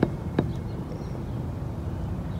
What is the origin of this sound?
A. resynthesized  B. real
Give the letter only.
B